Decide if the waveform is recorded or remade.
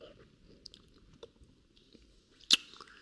recorded